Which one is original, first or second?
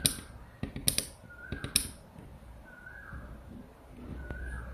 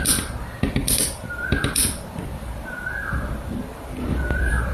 first